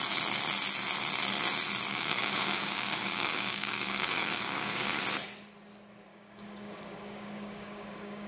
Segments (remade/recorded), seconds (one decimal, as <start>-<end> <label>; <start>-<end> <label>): 0.0-1.9 recorded; 1.9-5.0 remade; 5.0-6.1 recorded; 6.1-8.3 remade